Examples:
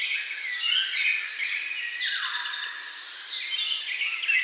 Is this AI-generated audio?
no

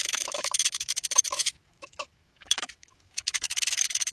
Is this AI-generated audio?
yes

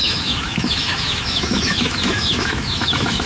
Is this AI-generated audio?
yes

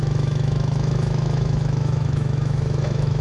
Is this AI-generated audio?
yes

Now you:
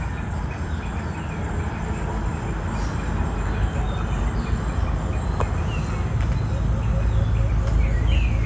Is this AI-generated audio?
no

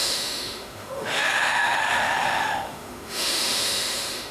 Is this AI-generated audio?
yes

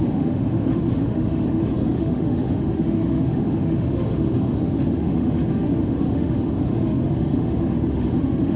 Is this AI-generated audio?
yes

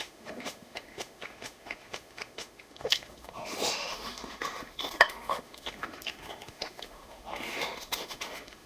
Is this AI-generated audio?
yes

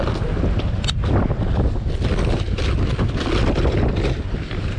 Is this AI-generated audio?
no